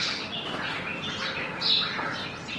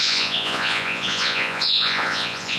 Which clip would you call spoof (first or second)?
second